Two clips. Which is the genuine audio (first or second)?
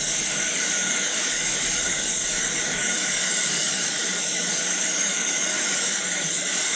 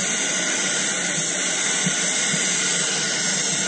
second